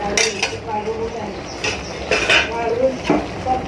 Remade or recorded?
recorded